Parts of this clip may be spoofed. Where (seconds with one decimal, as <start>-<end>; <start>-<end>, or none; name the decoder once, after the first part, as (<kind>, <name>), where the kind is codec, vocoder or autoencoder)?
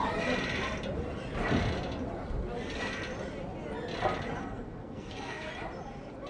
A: 4.4-5.5 (codec, SNAC)